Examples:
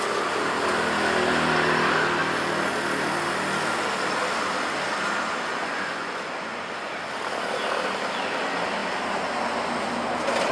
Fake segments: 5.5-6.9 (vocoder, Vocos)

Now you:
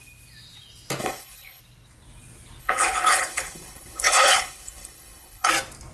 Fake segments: 1.0-1.6 (codec, HILCodec); 2.6-5.5

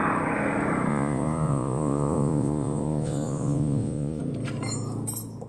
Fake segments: 0.9-4.2 (vocoder, Vocos)

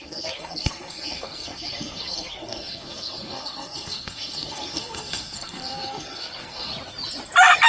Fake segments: 0.0-6.7 (codec, SNAC)

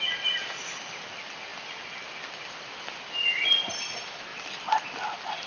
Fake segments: none

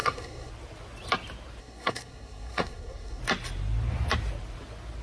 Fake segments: 0.0-0.5 (codec, SNAC); 1.6-3.2

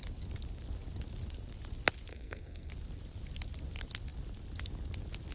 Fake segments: 2.1-2.7 (codec, SNAC)

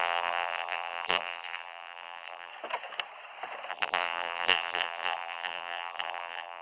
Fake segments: 0.0-2.5 (vocoder, BigVGAN v2); 3.7-6.6